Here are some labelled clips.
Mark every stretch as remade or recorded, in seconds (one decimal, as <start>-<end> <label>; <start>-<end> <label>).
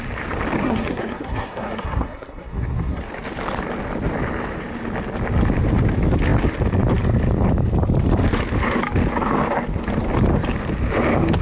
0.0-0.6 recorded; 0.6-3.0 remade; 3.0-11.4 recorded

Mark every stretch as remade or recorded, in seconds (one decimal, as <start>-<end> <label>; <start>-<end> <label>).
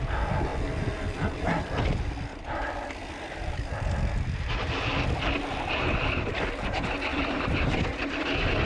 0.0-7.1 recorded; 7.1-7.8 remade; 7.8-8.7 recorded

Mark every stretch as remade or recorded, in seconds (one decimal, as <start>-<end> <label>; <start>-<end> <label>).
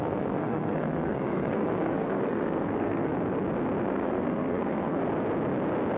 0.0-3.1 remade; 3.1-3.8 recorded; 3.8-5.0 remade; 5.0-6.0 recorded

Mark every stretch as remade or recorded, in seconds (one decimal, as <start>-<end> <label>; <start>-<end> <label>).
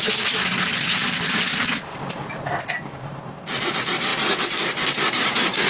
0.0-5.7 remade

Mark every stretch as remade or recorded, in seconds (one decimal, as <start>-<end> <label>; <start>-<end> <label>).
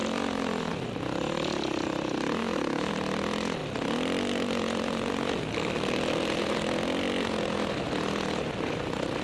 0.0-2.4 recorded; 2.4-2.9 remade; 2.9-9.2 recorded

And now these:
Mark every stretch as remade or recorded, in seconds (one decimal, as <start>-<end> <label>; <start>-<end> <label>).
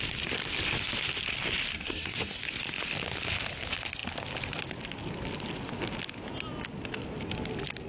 0.0-1.7 recorded; 1.7-2.4 remade; 2.4-7.9 recorded